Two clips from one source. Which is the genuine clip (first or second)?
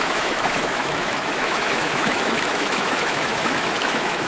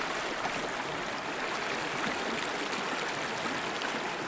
second